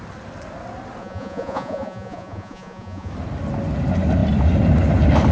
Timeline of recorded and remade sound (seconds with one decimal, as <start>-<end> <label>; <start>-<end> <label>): 0.0-1.0 recorded; 1.0-3.1 remade; 3.1-5.3 recorded